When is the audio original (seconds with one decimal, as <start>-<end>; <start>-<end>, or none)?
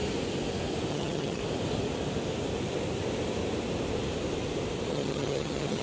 0.0-0.9; 1.4-4.9